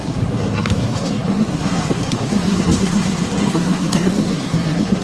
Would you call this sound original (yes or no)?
no